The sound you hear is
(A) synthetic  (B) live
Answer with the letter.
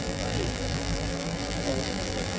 A